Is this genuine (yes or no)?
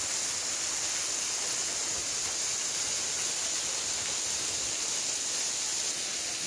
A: yes